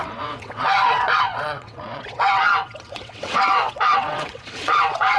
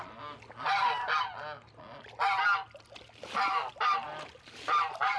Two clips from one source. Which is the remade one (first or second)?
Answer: first